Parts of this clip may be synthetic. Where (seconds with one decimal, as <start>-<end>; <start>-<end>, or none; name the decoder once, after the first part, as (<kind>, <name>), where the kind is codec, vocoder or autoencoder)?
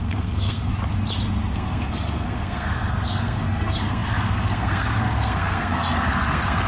0.0-0.7 (codec, SNAC); 1.5-6.7